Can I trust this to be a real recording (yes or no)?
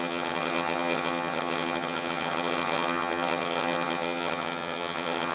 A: no